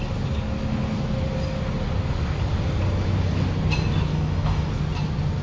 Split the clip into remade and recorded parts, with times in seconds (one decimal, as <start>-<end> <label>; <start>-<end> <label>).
0.0-4.1 recorded; 4.1-4.7 remade; 4.7-5.4 recorded